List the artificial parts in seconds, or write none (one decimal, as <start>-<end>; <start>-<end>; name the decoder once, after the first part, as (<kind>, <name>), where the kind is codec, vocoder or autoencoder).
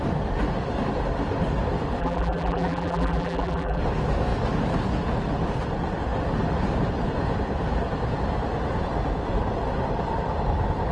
2.0-3.8 (vocoder, BigVGAN v2)